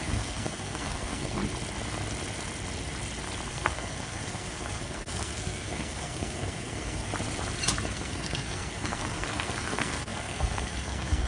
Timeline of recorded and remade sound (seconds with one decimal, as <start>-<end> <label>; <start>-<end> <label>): 0.0-1.4 remade; 1.4-3.5 recorded; 3.5-7.1 remade; 7.1-7.9 recorded; 7.9-11.3 remade